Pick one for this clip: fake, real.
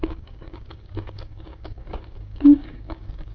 fake